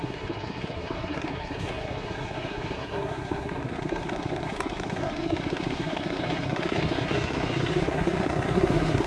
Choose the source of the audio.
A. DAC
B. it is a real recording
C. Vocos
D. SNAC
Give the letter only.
D